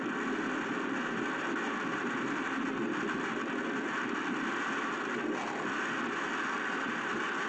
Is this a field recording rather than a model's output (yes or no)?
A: yes